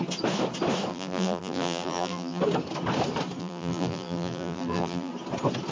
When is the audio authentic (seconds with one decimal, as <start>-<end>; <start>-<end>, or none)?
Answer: 0.0-0.9; 2.4-3.4; 5.1-5.7